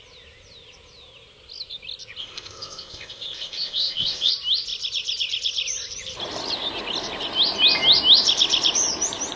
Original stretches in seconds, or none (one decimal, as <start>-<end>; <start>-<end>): 0.0-2.2; 4.3-9.4